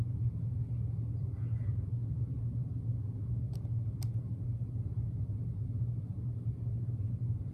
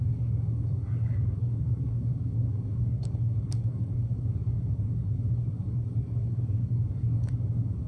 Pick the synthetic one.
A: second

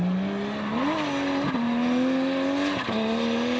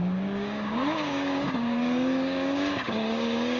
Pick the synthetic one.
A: second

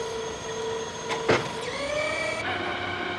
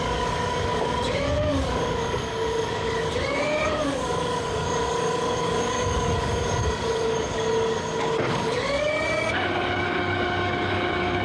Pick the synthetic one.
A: second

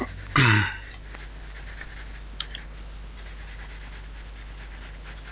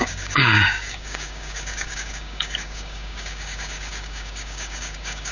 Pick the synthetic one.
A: second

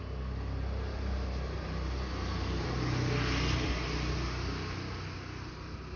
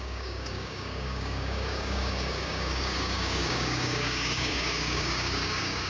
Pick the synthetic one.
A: second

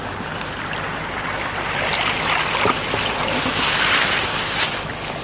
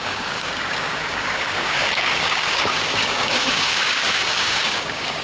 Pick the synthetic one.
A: second